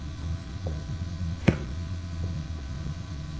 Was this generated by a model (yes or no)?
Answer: yes